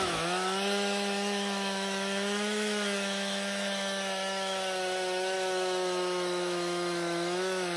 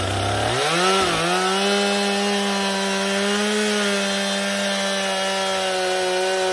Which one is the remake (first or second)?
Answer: first